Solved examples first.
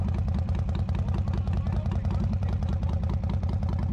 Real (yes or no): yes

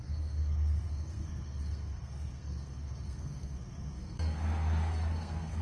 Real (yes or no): no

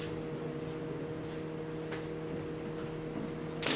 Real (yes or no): yes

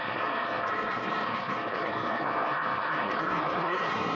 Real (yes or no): no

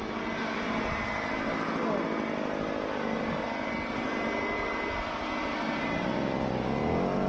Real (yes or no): yes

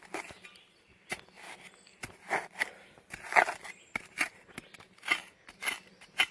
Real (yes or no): yes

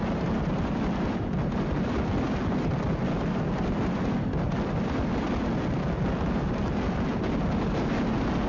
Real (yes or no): yes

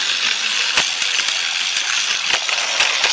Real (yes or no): yes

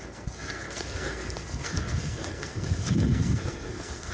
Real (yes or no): no